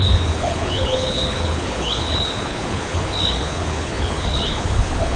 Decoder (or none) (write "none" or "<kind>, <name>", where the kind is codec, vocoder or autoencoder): codec, HILCodec